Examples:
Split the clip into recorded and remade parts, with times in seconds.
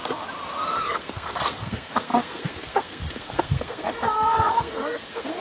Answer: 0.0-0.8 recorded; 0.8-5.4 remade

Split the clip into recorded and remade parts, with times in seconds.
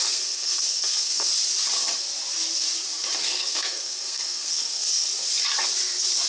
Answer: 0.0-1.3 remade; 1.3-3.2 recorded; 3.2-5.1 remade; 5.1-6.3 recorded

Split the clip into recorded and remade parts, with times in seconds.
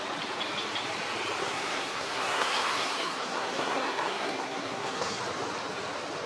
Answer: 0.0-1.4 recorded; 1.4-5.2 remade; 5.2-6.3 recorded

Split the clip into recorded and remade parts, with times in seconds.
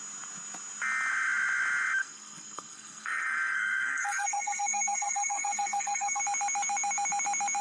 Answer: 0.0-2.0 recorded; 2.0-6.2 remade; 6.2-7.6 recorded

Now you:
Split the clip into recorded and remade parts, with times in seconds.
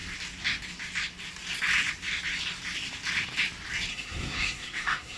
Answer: 0.0-3.9 recorded; 3.9-5.2 remade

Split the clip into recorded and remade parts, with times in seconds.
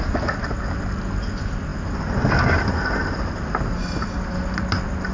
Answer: 0.0-5.1 recorded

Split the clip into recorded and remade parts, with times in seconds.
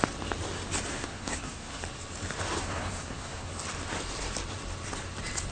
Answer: 0.0-0.9 recorded; 0.9-1.8 remade; 1.8-2.6 recorded; 2.6-3.5 remade; 3.5-5.5 recorded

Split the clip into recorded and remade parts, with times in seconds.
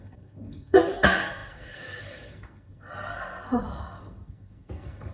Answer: 0.0-5.1 remade